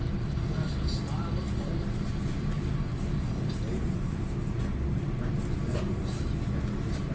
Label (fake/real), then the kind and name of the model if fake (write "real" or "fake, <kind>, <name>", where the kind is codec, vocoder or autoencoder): real